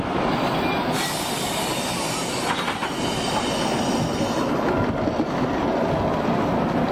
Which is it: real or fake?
real